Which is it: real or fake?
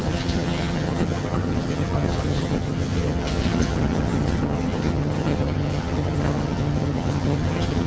fake